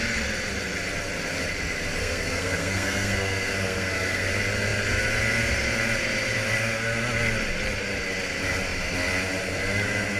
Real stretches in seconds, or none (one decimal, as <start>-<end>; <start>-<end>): 0.0-2.0; 4.3-10.2